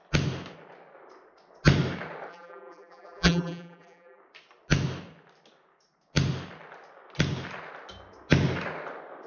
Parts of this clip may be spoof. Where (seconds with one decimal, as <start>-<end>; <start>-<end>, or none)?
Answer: 2.3-4.2